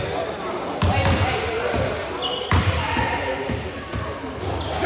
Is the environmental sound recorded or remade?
recorded